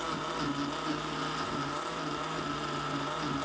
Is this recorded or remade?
recorded